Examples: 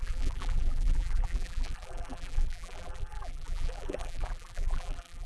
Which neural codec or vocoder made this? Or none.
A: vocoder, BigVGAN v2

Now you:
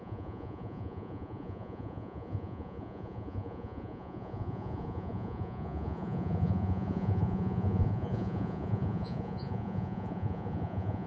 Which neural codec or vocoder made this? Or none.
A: vocoder, Vocos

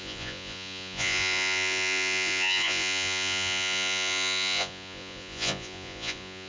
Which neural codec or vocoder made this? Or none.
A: vocoder, Vocos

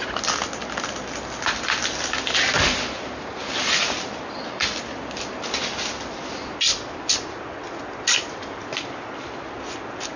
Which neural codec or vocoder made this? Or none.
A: none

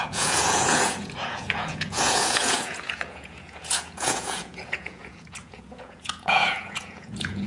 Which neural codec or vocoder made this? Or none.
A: vocoder, Vocos